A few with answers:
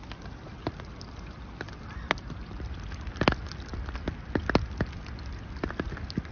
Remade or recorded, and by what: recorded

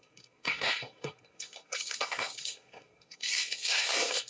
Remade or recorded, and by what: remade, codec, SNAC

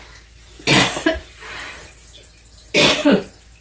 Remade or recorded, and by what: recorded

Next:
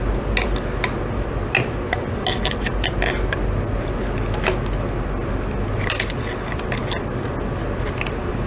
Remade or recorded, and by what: recorded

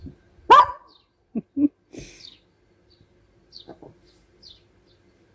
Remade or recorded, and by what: recorded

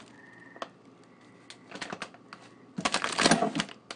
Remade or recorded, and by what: recorded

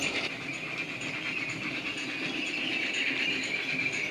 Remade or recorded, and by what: recorded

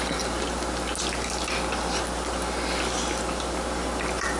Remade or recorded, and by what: recorded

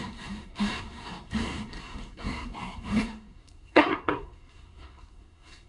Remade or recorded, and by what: remade, codec, SNAC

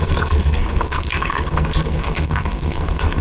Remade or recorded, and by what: remade, codec, SNAC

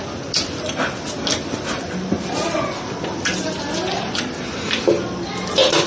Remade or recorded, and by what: recorded